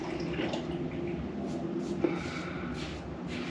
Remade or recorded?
recorded